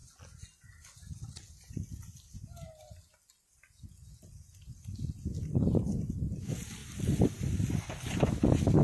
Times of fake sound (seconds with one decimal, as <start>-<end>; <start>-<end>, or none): none